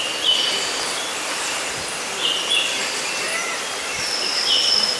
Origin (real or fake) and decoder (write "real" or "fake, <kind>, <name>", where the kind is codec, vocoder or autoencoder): real